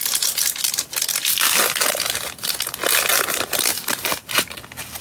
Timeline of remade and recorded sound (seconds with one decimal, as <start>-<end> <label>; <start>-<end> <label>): 0.0-5.0 recorded

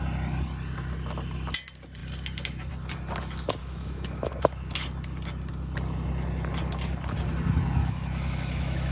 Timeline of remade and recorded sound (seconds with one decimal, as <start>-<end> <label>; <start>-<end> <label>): 0.0-3.6 recorded; 3.6-4.3 remade; 4.3-7.8 recorded; 7.8-8.9 remade

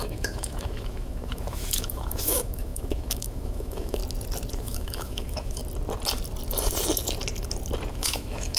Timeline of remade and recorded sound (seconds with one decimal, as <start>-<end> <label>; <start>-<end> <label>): 0.0-4.0 remade; 4.0-4.5 recorded; 4.5-5.6 remade; 5.6-7.9 recorded; 7.9-8.6 remade

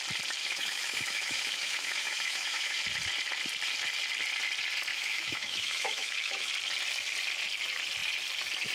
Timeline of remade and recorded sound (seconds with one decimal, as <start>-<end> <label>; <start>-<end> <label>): 0.0-0.4 recorded; 0.4-2.8 remade; 2.8-4.9 recorded; 4.9-6.5 remade; 6.5-8.7 recorded